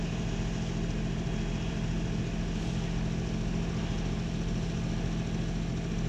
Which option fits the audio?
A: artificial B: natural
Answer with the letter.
B